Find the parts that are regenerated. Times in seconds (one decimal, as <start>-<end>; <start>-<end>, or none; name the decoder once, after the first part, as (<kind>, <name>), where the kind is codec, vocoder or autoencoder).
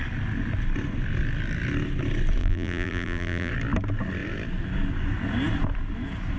2.4-3.5 (vocoder, BigVGAN v2)